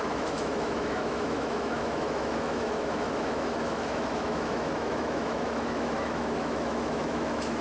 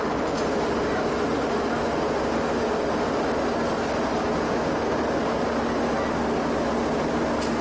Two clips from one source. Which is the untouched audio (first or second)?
second